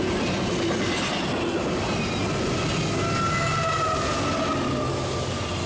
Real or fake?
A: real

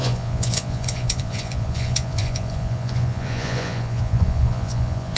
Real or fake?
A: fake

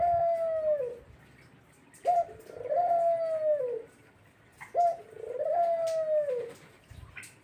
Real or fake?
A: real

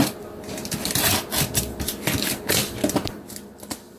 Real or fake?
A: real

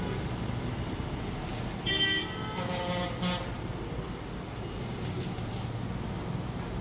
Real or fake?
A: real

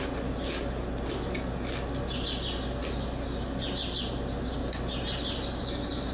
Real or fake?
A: real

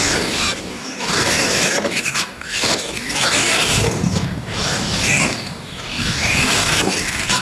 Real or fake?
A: fake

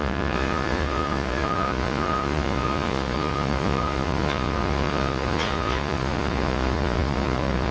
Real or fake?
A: fake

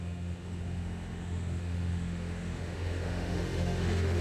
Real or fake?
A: fake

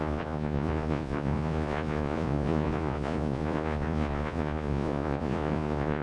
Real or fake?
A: fake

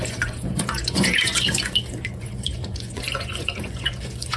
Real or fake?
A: fake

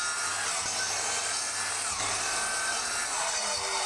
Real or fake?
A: real